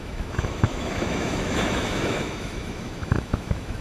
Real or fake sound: fake